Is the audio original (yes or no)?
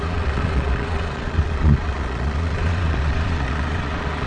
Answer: no